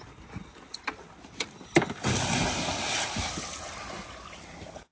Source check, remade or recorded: recorded